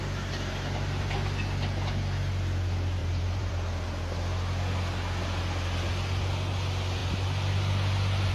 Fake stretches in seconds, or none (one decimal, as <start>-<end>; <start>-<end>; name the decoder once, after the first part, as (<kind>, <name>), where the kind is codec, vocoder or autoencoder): 3.0-3.5 (vocoder, BigVGAN v2)